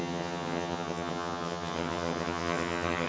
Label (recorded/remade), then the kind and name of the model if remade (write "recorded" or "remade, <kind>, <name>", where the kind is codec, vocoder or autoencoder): remade, vocoder, HiFi-GAN